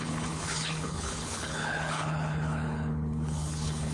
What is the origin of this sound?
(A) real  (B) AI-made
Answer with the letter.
B